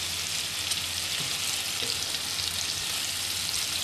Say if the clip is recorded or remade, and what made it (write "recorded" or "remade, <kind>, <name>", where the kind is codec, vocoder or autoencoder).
recorded